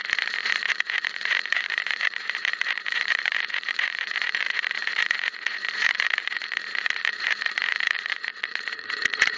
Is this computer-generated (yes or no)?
yes